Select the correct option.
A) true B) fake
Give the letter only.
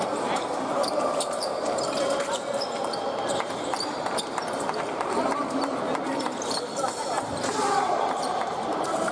B